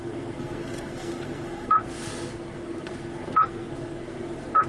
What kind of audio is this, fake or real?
fake